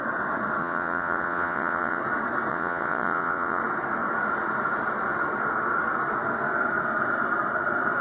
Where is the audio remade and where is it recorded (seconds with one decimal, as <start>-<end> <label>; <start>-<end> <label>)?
0.0-0.6 recorded; 0.6-2.0 remade; 2.0-2.5 recorded; 2.5-3.6 remade; 3.6-8.0 recorded